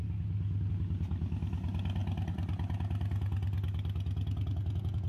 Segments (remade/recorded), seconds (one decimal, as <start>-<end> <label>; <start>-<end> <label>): 0.0-5.1 recorded